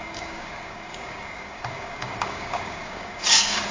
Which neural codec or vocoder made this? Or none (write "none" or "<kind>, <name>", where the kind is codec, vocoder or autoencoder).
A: codec, DAC